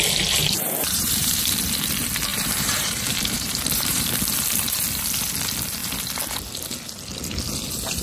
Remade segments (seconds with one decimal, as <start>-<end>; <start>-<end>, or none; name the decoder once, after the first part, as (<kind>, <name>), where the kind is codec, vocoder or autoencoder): 0.4-1.4 (vocoder, BigVGAN v2); 2.3-4.1